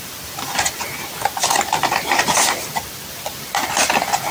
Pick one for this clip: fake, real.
fake